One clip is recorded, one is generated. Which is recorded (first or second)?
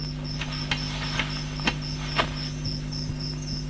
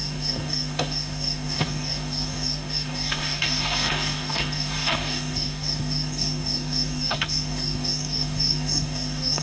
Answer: first